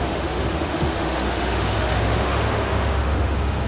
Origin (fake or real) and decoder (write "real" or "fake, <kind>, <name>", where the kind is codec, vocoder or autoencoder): fake, autoencoder, DAC-VAE